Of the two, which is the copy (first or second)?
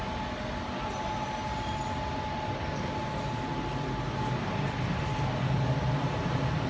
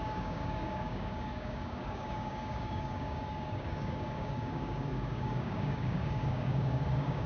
second